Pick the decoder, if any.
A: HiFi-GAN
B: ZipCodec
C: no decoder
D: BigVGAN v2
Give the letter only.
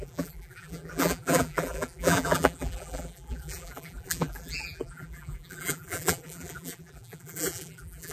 D